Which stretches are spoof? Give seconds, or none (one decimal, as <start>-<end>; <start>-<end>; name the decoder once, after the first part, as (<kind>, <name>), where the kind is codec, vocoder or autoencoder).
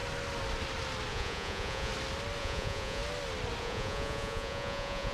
1.1-1.9 (vocoder, Vocos); 2.4-3.0; 3.6-5.1